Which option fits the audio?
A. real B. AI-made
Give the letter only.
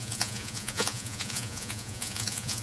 B